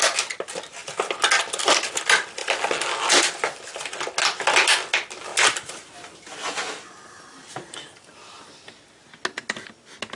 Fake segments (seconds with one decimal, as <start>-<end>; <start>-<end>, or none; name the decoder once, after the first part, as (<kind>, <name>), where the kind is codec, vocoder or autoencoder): none